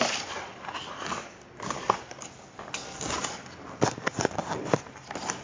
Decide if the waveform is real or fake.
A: real